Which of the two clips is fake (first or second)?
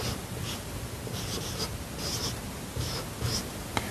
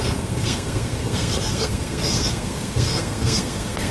second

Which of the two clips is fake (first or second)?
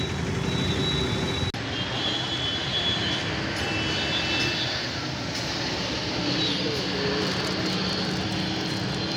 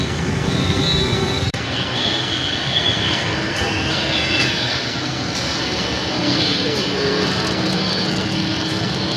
second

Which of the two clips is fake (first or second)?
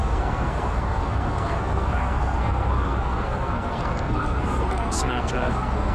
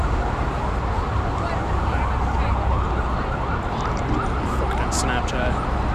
first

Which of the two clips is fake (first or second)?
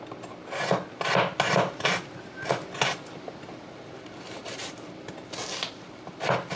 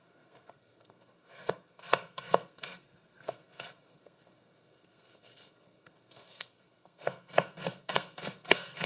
second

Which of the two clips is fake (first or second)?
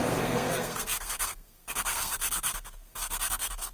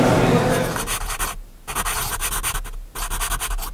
first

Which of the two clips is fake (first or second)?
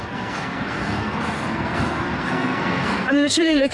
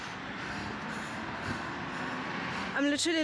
first